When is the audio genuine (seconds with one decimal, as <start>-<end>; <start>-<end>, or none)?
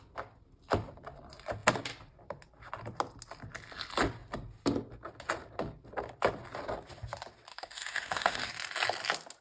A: 0.0-7.5; 8.5-9.4